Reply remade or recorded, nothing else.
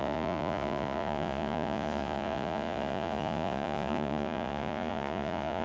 remade